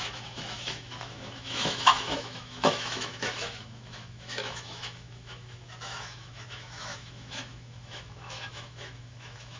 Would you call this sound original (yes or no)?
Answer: no